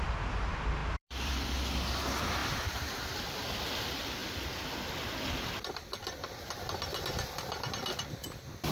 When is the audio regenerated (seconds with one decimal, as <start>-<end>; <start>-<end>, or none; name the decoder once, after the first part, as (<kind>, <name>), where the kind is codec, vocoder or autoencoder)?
0.8-1.7 (vocoder, BigVGAN v2); 2.4-3.6; 4.2-4.7; 6.0-7.3